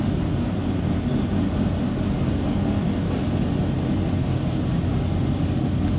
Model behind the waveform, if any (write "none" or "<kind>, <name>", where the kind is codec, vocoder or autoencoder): none